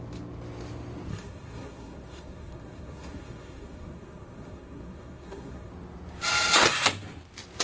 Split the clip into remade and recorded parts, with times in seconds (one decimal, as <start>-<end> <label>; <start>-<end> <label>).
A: 0.0-1.1 recorded; 1.1-5.7 remade; 5.7-7.6 recorded